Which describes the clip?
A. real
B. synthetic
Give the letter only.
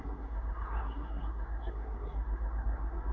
B